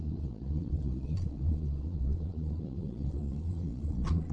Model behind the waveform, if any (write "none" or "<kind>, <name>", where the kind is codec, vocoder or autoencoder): vocoder, Vocos